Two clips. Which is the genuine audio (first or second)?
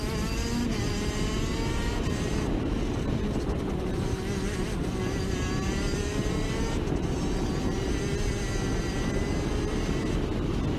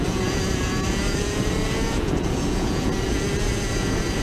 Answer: first